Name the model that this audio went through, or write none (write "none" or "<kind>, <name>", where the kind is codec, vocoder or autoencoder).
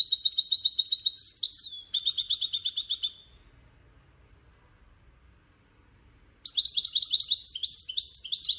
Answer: none